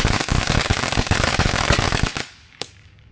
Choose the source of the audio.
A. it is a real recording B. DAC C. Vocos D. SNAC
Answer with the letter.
B